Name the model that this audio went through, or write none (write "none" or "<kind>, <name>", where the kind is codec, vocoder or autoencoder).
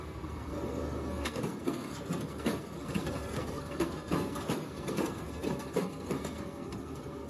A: codec, SNAC